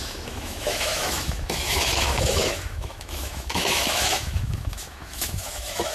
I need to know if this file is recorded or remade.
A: remade